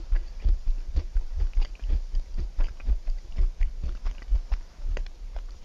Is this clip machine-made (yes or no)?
yes